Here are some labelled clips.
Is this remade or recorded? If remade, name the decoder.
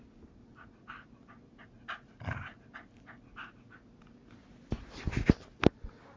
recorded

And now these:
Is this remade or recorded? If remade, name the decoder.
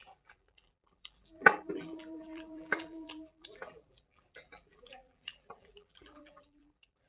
remade, vocoder, BigVGAN v2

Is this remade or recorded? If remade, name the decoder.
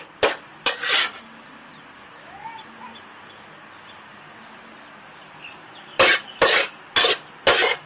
recorded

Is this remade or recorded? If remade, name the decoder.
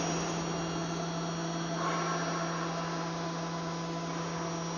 recorded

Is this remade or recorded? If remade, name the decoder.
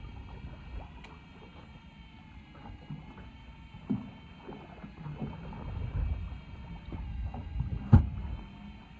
recorded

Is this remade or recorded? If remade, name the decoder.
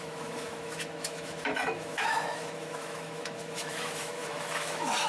remade, autoencoder, DAC-VAE